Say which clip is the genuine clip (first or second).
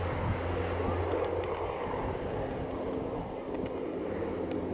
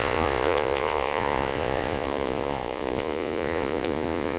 first